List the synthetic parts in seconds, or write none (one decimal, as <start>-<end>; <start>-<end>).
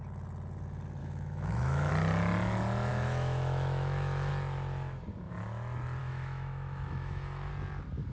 1.0-1.9; 2.9-4.3; 6.0-7.5